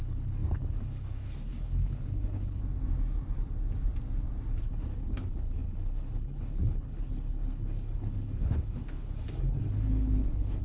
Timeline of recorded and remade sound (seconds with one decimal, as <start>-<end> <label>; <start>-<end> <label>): 0.0-2.6 remade; 2.6-4.6 recorded; 4.6-10.6 remade